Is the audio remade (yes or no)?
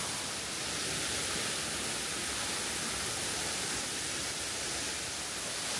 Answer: no